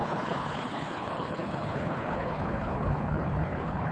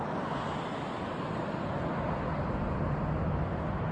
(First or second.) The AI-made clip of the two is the first